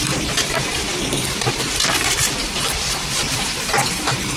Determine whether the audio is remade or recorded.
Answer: remade